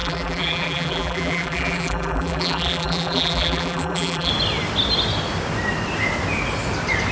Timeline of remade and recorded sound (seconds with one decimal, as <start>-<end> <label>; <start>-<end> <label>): 0.0-4.3 remade; 4.3-7.1 recorded